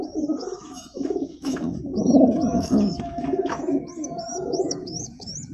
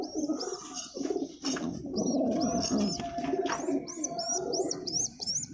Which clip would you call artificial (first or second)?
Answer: first